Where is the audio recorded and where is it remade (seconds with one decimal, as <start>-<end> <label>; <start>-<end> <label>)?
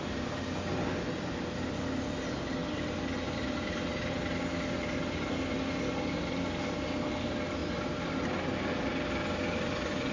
0.0-10.1 recorded